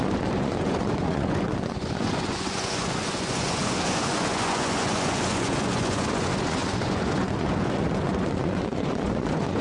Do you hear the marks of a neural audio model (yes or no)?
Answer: yes